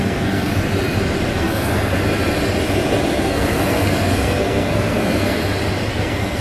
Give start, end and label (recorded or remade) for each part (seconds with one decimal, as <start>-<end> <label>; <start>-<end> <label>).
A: 0.0-0.5 remade; 0.5-1.3 recorded; 1.3-1.9 remade; 1.9-3.1 recorded; 3.1-5.4 remade; 5.4-5.9 recorded; 5.9-6.4 remade